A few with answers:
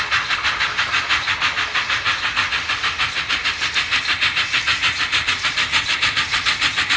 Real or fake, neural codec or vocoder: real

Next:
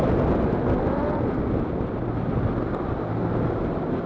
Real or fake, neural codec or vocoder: real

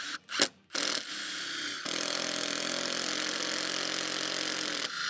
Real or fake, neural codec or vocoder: real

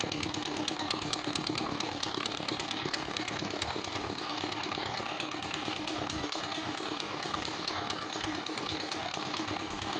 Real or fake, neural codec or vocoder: fake, codec, DAC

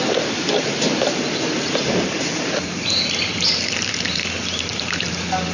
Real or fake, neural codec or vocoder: real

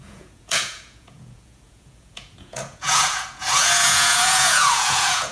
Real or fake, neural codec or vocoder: fake, vocoder, Vocos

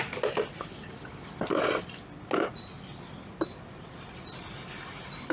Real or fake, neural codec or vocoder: real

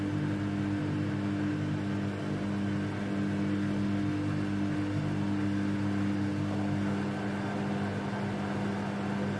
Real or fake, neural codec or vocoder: real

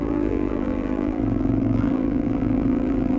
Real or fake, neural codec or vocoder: fake, vocoder, BigVGAN v2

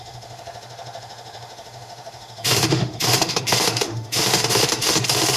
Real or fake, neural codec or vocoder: fake, autoencoder, DAC-VAE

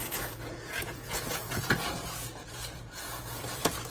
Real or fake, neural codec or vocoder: fake, vocoder, Vocos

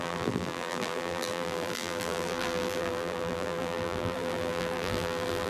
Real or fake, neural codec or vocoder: fake, vocoder, BigVGAN v2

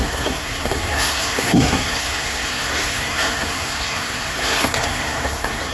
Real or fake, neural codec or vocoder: fake, codec, SNAC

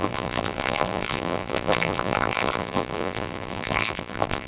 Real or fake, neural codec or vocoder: fake, vocoder, BigVGAN v2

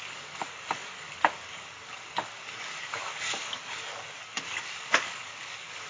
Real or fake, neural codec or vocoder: fake, codec, DAC